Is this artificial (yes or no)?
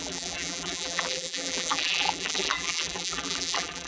yes